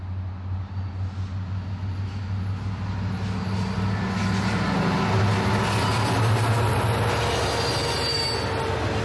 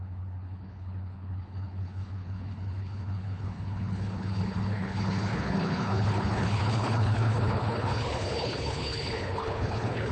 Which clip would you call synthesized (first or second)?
second